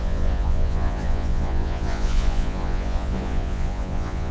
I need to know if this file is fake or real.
fake